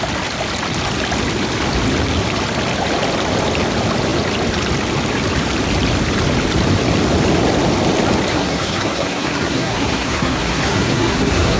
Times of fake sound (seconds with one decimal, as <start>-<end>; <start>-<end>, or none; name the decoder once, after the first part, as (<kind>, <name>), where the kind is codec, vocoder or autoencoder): 8.3-11.6 (codec, SNAC)